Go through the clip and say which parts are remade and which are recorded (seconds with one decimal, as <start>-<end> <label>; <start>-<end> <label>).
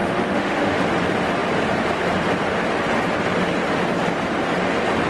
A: 0.0-0.8 remade; 0.8-5.1 recorded